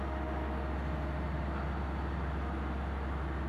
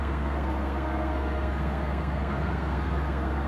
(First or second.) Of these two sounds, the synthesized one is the second